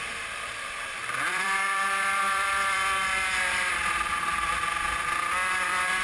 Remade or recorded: remade